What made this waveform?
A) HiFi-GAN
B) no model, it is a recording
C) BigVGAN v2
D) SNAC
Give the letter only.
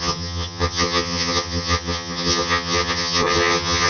A